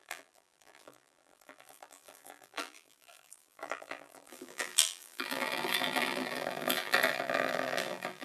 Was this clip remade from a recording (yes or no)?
yes